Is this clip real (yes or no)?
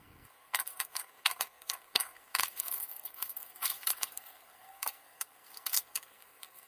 no